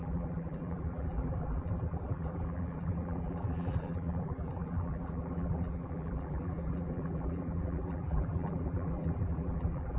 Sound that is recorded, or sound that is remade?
remade